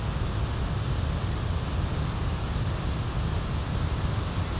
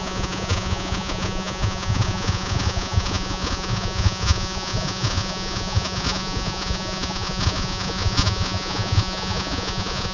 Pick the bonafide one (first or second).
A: first